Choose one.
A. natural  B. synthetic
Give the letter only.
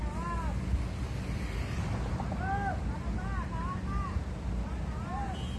A